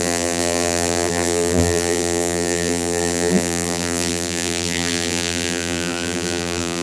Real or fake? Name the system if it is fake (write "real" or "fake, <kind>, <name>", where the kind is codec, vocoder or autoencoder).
fake, vocoder, BigVGAN v2